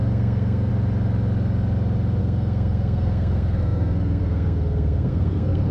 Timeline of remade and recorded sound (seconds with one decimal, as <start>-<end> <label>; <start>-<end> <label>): 0.0-0.7 remade; 0.7-2.2 recorded; 2.2-5.7 remade